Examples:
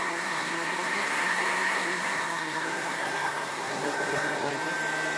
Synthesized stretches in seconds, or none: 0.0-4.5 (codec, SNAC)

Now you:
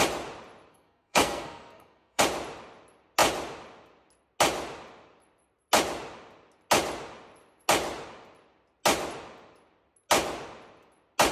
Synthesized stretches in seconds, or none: 0.7-2.2 (codec, SNAC)

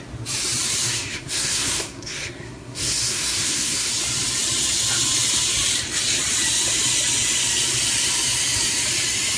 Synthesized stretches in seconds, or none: 0.8-3.9 (codec, SNAC)